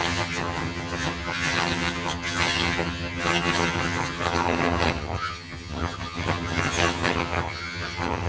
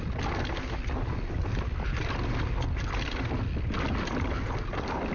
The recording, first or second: second